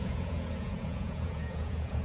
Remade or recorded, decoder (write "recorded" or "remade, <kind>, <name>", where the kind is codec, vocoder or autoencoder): remade, vocoder, Vocos